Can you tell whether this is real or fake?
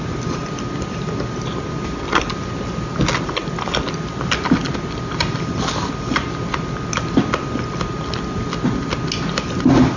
real